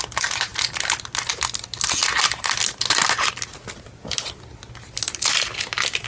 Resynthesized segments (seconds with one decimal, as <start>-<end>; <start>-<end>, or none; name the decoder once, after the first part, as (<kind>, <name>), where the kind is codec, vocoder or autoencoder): none